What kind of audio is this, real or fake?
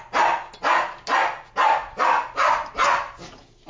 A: real